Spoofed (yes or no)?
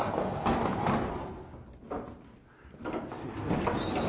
no